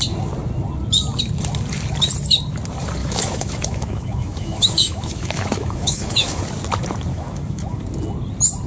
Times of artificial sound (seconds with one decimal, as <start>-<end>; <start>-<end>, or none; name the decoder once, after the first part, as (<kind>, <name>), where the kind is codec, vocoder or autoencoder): 3.0-6.4 (autoencoder, DAC-VAE); 7.1-7.8